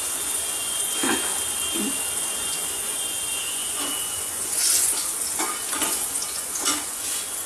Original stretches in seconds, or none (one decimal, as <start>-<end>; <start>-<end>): 1.0-2.3